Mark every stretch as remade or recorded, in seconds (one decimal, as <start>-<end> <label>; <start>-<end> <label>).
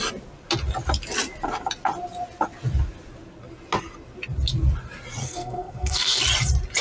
0.0-5.2 recorded; 5.2-6.2 remade; 6.2-6.8 recorded